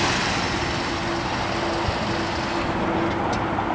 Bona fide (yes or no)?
yes